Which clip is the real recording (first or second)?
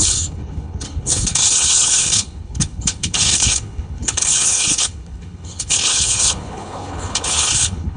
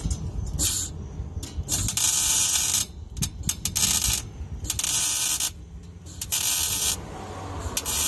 second